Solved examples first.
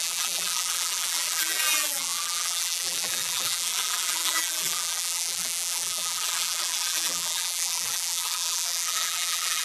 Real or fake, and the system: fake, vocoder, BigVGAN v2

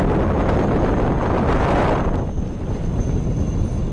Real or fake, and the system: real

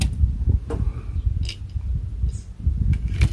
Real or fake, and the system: real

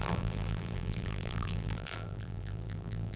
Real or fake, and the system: fake, vocoder, BigVGAN v2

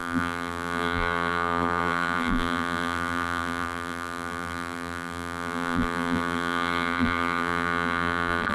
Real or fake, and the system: fake, vocoder, BigVGAN v2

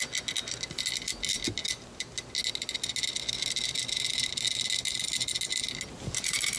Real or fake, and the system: real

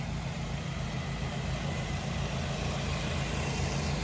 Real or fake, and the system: fake, vocoder, BigVGAN v2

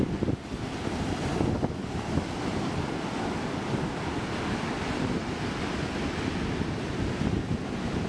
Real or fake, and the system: real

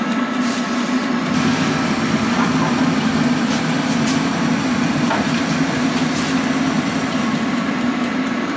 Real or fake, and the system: fake, vocoder, BigVGAN v2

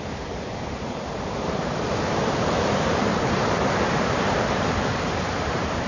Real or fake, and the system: fake, vocoder, BigVGAN v2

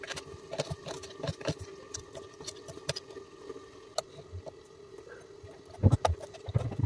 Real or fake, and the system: real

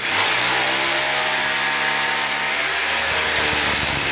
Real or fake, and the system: real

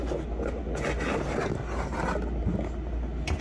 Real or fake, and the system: real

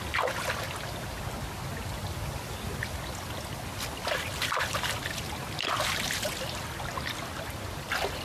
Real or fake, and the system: real